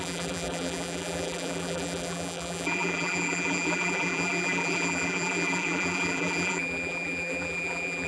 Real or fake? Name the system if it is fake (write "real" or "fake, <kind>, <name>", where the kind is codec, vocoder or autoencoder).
fake, vocoder, BigVGAN v2